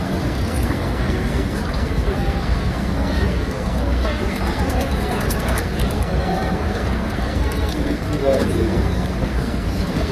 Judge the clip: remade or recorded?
remade